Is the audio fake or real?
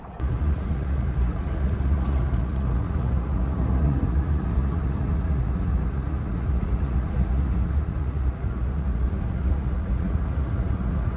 fake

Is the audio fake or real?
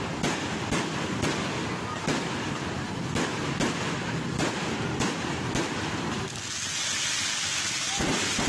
real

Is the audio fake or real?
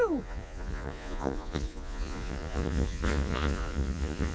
fake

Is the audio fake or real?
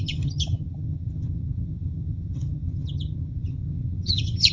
fake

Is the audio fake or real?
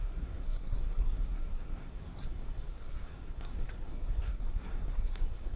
fake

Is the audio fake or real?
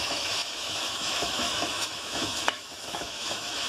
fake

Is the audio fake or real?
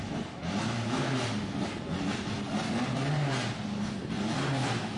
real